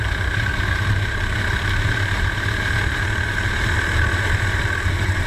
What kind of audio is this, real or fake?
real